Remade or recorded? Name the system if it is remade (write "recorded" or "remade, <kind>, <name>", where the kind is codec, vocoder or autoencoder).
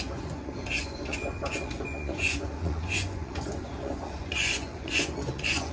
remade, vocoder, Vocos